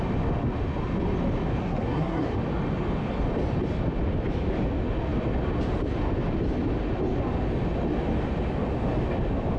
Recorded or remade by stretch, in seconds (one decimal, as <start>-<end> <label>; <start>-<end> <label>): 0.0-1.6 recorded; 1.6-2.3 remade; 2.3-9.6 recorded